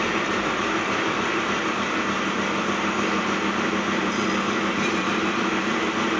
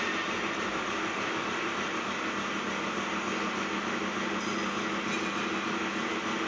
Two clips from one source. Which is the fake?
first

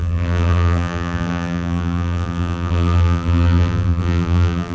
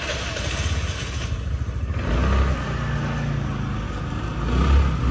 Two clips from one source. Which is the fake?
first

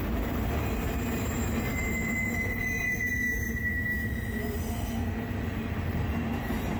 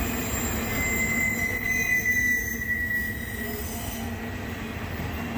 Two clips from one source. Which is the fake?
first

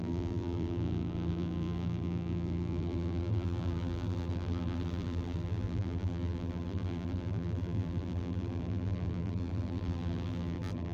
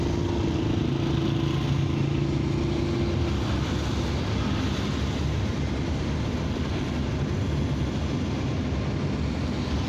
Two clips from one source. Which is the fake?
first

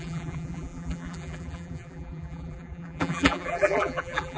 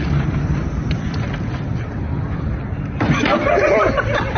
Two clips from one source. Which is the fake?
first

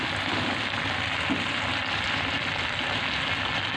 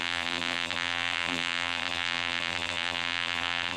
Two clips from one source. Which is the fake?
second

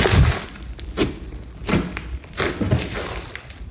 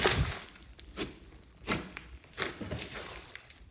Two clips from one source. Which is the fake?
second